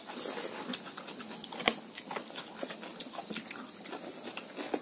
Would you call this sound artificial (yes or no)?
no